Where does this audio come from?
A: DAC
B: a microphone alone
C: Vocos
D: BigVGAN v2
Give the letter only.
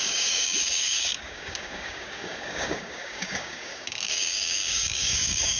A